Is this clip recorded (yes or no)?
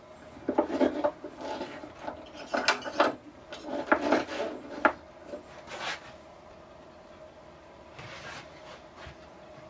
yes